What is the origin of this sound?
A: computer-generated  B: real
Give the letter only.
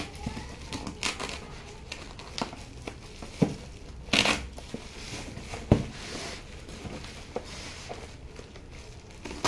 B